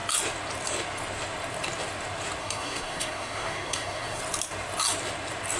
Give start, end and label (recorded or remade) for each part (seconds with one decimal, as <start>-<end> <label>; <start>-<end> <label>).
0.0-2.4 recorded; 2.4-4.2 remade; 4.2-5.6 recorded